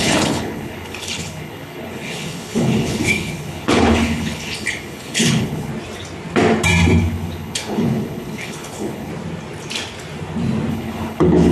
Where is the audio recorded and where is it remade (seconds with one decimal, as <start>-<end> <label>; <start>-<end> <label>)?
0.0-5.7 remade; 5.7-7.0 recorded; 7.0-9.1 remade; 9.1-10.7 recorded; 10.7-11.5 remade